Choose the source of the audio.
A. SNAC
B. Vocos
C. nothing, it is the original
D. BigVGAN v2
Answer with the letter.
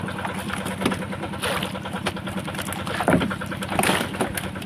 C